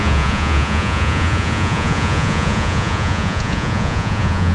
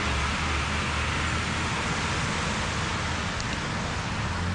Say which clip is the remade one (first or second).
first